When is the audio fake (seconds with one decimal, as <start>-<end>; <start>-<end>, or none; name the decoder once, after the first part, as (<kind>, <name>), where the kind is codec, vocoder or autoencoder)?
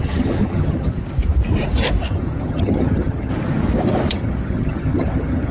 0.0-1.0 (vocoder, HiFi-GAN); 2.1-3.3; 4.1-5.5